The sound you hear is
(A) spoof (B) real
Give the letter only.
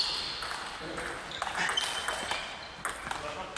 B